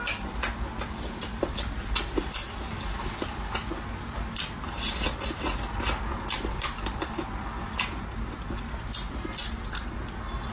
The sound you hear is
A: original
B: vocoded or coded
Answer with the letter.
A